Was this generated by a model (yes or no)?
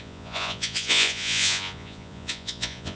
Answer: yes